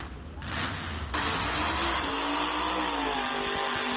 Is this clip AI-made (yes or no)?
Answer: no